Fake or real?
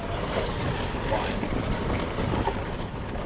real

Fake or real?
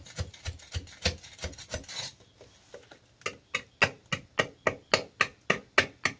real